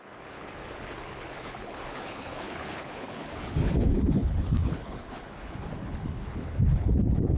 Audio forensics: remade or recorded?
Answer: remade